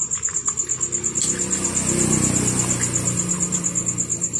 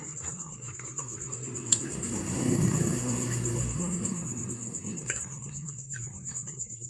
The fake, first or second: second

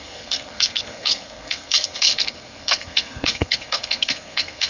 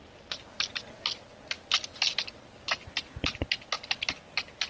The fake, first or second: first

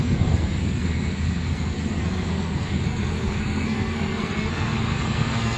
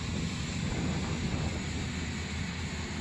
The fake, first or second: first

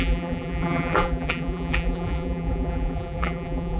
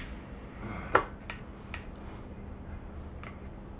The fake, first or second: first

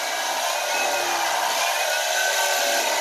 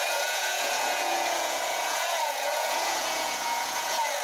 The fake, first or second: second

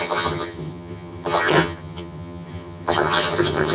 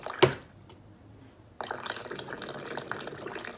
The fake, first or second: first